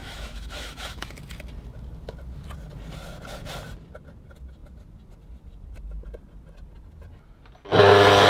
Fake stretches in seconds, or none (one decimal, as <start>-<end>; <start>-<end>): 0.0-1.1